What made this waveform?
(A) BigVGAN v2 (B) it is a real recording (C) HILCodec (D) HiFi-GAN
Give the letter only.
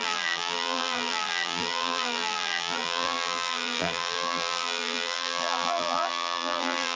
A